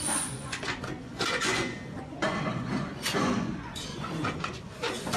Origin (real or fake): fake